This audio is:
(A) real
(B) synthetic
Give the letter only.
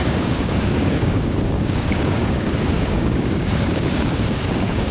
B